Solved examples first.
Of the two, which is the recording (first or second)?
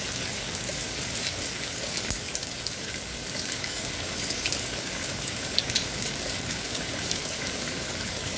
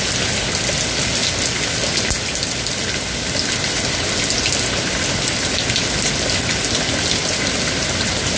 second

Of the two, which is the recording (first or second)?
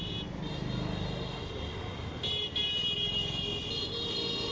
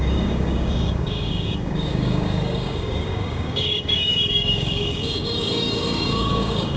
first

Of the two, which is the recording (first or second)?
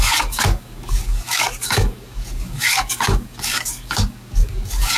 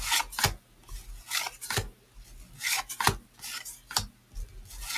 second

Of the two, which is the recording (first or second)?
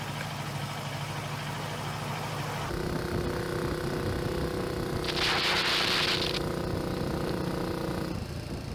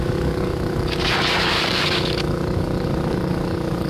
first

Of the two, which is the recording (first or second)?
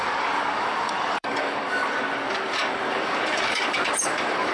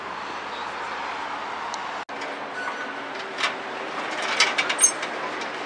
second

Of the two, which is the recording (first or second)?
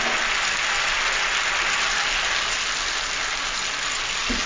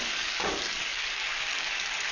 first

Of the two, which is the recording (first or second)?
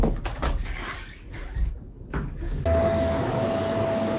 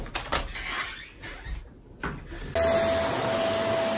second